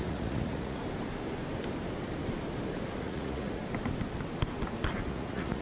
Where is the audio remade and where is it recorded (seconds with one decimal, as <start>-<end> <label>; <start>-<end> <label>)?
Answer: 0.0-0.8 remade; 0.8-3.0 recorded; 3.0-3.6 remade; 3.6-5.1 recorded; 5.1-5.6 remade